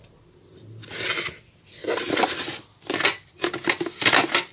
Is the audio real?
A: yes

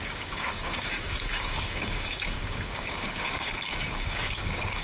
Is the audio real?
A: no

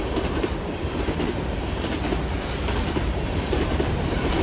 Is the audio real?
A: no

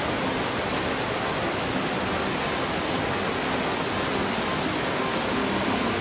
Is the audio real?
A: yes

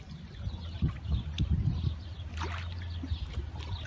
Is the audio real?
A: yes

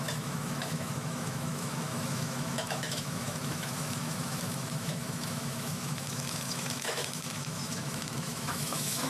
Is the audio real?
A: no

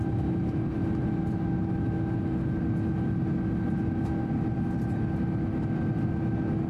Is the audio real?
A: yes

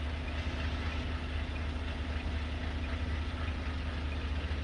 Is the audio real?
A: yes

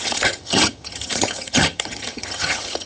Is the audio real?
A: no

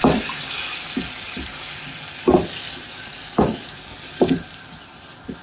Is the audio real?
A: yes